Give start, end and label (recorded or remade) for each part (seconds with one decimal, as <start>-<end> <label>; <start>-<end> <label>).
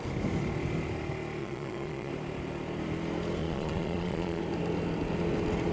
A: 0.0-1.4 recorded; 1.4-2.1 remade; 2.1-3.4 recorded; 3.4-4.4 remade; 4.4-5.7 recorded